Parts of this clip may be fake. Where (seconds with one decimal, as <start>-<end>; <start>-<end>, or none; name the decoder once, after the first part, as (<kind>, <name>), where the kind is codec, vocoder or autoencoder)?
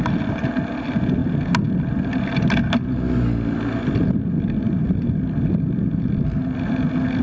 none